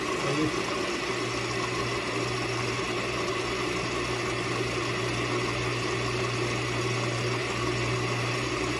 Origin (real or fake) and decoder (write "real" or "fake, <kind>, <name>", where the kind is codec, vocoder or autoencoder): real